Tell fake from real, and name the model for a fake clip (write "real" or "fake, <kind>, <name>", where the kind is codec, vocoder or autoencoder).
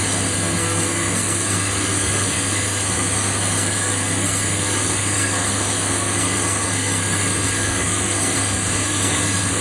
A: fake, codec, SNAC